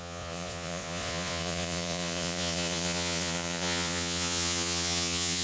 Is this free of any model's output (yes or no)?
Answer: no